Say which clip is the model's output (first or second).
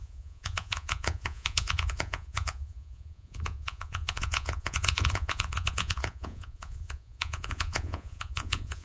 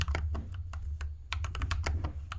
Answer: first